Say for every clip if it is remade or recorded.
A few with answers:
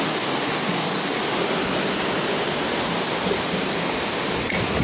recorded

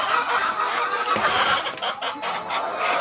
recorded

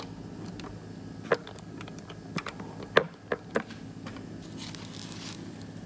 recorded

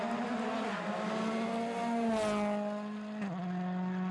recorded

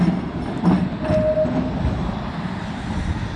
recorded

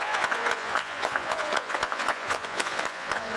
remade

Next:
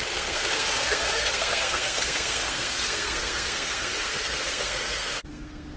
remade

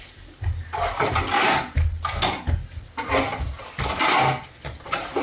recorded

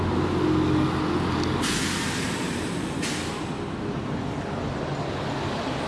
recorded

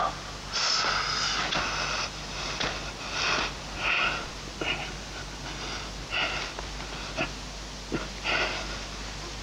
recorded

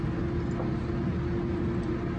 recorded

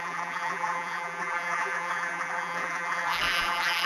remade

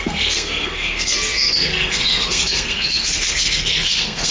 remade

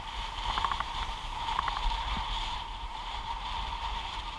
remade